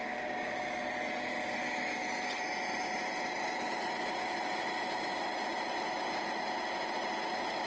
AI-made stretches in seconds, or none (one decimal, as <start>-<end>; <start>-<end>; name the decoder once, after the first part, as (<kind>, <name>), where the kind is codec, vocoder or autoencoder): 0.0-0.8 (codec, DAC)

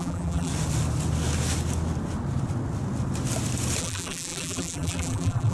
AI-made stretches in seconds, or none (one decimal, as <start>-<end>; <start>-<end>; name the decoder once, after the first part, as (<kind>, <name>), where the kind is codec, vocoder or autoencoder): 0.0-0.5 (vocoder, BigVGAN v2); 3.8-5.5

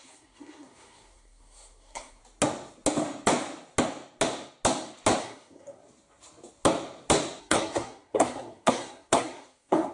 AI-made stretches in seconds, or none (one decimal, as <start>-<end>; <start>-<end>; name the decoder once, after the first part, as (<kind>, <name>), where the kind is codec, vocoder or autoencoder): 0.0-2.2 (codec, SNAC); 5.2-5.8; 7.4-9.9